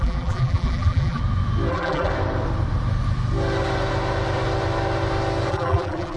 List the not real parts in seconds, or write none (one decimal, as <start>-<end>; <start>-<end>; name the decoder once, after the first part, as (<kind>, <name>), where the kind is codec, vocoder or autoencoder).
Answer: 0.0-1.2 (vocoder, BigVGAN v2); 1.7-2.1; 5.5-6.2